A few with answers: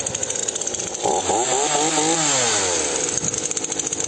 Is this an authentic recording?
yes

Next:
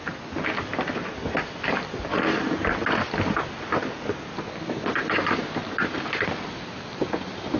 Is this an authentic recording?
yes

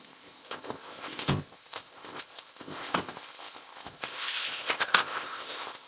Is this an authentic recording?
no